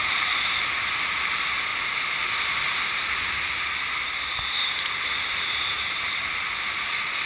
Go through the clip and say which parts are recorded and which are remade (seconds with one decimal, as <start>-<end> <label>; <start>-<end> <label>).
0.0-7.3 recorded